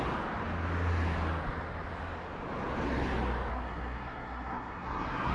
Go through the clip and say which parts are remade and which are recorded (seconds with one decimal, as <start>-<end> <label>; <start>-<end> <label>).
0.0-3.5 recorded; 3.5-5.3 remade